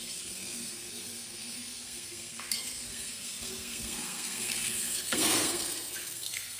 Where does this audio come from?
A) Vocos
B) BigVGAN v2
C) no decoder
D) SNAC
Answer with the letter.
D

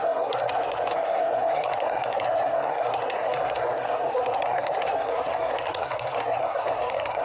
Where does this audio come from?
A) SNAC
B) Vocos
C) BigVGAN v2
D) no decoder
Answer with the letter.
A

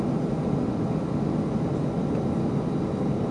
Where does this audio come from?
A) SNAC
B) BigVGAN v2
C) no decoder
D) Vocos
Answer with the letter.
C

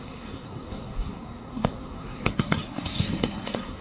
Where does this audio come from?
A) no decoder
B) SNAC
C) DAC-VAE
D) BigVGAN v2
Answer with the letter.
B